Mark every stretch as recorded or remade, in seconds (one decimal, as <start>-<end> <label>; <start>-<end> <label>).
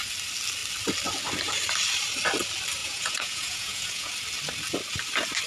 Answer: 0.0-2.8 recorded; 2.8-4.1 remade; 4.1-5.5 recorded